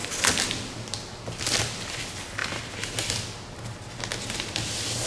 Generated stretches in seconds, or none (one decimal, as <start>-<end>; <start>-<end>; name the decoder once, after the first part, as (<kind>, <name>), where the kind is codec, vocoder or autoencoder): none